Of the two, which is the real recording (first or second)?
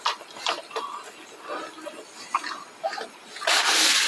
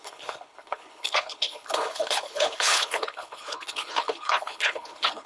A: first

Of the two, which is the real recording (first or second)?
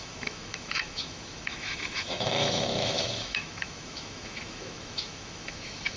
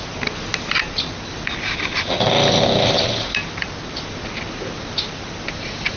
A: second